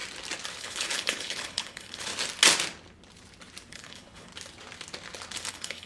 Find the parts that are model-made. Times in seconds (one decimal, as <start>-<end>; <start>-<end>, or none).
0.5-2.1; 3.7-4.3; 5.5-5.9